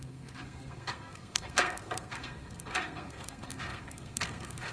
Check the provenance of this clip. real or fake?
fake